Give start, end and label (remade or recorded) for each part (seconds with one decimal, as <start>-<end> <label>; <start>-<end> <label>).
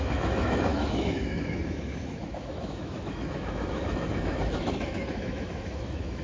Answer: 0.0-6.2 remade